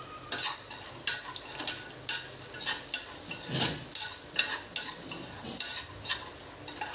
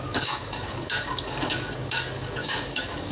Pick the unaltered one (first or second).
first